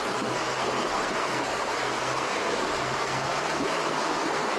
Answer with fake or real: fake